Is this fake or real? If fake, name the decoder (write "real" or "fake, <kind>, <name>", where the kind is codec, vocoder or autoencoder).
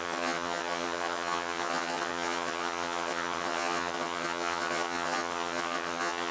fake, vocoder, HiFi-GAN